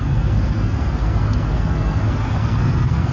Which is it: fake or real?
fake